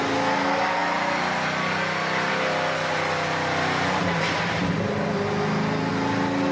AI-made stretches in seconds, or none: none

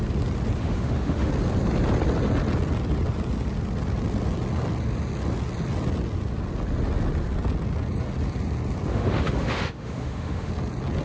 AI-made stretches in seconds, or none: 0.6-1.3 (autoencoder, DAC-VAE); 8.9-10.5

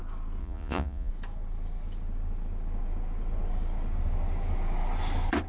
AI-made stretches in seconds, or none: 0.4-1.1 (vocoder, Vocos)

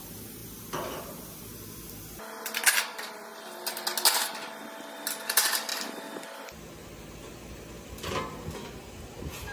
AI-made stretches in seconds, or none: none

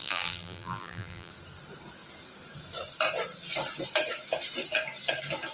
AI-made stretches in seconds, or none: 0.0-1.3 (vocoder, BigVGAN v2)

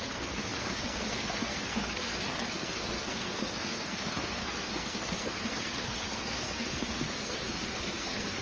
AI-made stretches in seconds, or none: 0.0-8.4 (codec, SNAC)

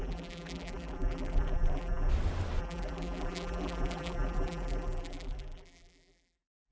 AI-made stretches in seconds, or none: 0.0-2.1 (vocoder, BigVGAN v2); 2.6-6.7